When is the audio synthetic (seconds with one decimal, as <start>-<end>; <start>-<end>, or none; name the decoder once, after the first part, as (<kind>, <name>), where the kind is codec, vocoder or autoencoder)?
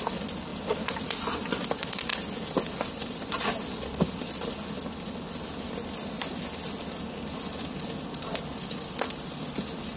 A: none